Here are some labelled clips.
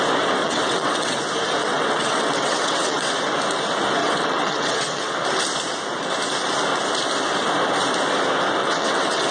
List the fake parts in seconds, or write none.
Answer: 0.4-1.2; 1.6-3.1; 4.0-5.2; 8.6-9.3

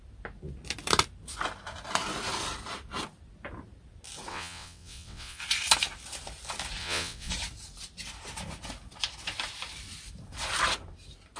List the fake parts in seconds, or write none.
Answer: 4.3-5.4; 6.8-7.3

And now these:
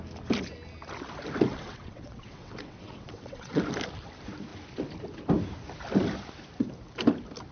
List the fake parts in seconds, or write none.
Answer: 1.5-3.6